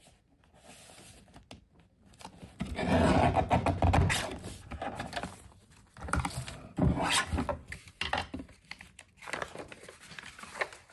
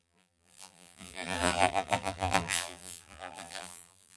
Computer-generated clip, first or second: second